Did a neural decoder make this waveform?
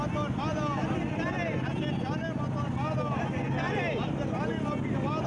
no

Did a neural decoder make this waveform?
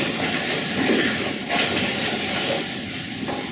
no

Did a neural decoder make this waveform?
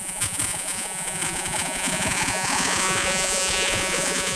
yes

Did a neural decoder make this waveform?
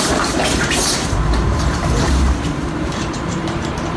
yes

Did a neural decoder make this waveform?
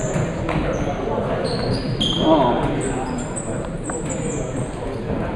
no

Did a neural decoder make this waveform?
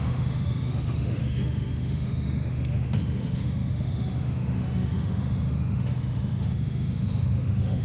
yes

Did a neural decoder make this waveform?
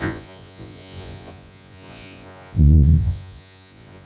yes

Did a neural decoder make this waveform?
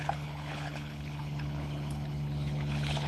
yes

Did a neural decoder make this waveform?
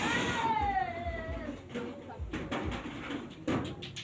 no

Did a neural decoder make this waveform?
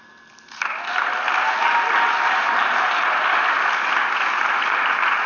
no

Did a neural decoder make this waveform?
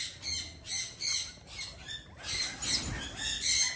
no